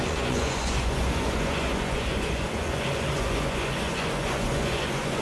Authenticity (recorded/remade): remade